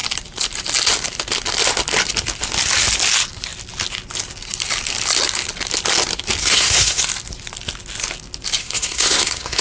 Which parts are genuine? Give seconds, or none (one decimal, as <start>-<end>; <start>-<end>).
0.0-6.4; 7.0-8.6